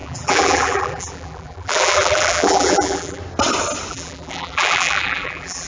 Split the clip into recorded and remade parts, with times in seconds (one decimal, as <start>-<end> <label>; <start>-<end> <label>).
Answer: 0.0-3.2 remade; 3.2-3.9 recorded; 3.9-5.7 remade